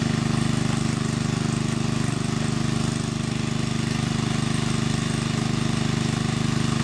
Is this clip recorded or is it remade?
recorded